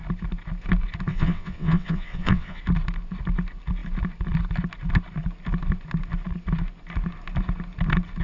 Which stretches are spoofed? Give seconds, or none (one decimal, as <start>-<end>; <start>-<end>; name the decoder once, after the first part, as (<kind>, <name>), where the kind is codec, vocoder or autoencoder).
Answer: 1.1-2.6 (vocoder, WaveNeXt)